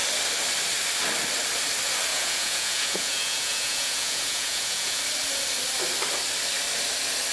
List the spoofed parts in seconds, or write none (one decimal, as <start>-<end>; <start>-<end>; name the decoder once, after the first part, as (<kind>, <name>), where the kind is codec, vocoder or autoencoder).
2.1-5.0 (vocoder, Vocos)